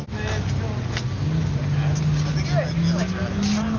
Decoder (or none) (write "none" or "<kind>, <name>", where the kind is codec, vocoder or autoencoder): none